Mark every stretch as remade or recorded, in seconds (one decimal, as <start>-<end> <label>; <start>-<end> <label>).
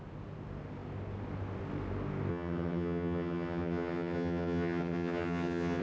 0.0-2.3 recorded; 2.3-5.8 remade